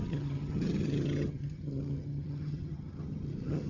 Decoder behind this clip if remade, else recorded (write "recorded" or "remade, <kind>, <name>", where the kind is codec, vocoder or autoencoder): remade, vocoder, HiFi-GAN